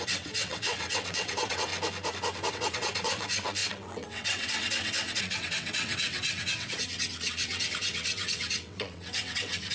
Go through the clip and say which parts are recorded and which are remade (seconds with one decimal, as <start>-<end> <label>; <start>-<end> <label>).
0.0-1.7 remade; 1.7-2.5 recorded; 2.5-9.7 remade